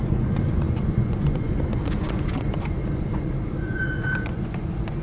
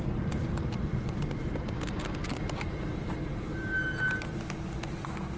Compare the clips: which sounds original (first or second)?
second